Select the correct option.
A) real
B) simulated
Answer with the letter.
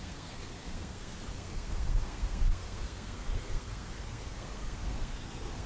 B